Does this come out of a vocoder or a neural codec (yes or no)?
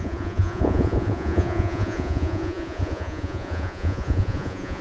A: yes